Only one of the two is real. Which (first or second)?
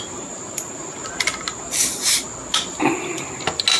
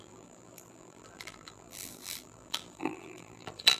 first